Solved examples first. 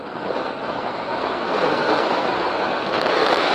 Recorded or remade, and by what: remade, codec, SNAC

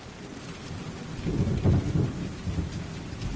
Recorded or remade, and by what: recorded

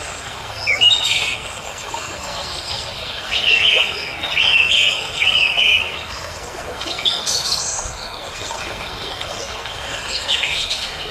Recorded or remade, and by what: remade, codec, SNAC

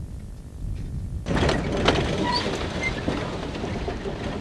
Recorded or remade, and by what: recorded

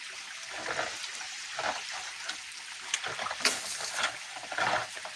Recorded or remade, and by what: recorded